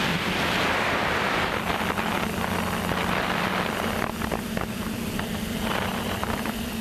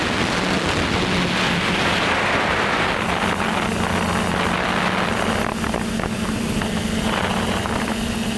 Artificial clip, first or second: first